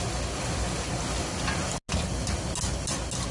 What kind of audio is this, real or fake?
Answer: real